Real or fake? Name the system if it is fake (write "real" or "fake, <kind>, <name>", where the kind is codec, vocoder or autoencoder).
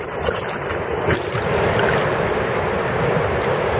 real